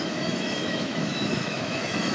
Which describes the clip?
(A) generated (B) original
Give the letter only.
A